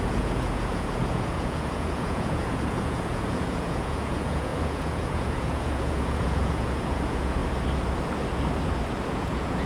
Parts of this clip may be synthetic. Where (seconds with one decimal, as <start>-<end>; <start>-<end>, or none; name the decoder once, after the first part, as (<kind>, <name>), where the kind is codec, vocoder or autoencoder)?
0.0-7.4 (vocoder, Vocos); 9.1-9.7